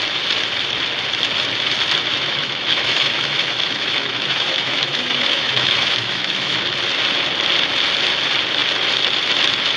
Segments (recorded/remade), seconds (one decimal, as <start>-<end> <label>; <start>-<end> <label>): 0.0-2.1 recorded; 2.1-6.6 remade; 6.6-9.8 recorded